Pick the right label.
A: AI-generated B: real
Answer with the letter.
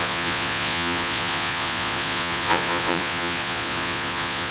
A